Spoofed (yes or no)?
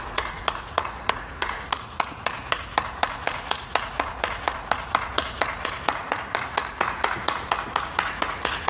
yes